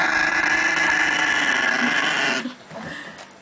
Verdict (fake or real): real